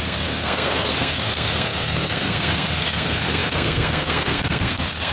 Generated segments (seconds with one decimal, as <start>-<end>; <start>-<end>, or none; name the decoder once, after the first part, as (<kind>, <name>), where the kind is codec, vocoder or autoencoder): 0.0-5.1 (codec, SNAC)